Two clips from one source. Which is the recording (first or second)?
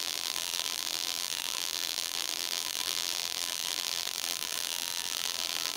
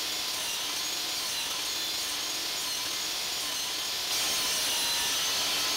second